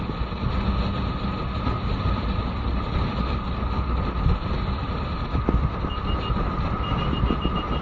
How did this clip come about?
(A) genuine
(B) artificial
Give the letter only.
A